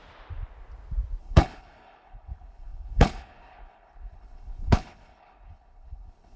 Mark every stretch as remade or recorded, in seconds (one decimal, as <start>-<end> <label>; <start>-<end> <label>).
0.0-1.2 recorded; 1.2-6.4 remade